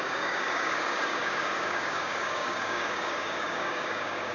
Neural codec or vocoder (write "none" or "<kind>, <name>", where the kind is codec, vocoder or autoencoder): codec, DAC